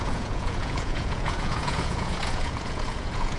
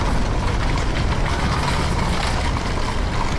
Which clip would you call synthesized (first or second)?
first